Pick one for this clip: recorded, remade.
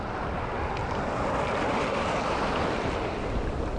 recorded